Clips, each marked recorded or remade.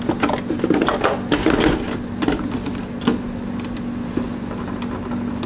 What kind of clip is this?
recorded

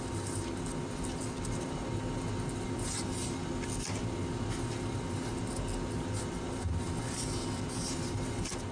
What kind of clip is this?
recorded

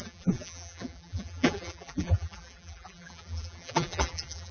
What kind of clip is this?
remade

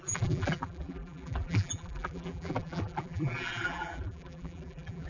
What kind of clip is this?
remade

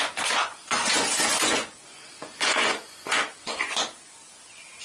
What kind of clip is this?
remade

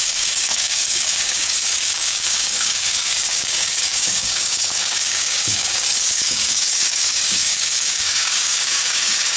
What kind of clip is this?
remade